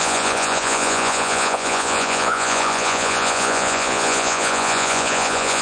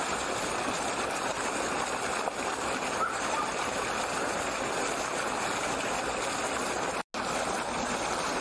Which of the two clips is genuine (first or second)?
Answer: second